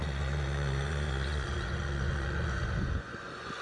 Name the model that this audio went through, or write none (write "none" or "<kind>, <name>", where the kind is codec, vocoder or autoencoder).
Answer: vocoder, Vocos